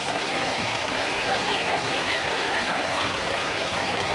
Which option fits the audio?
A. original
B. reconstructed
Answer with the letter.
B